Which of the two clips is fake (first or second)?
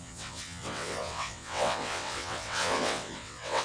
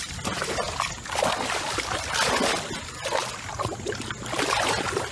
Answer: first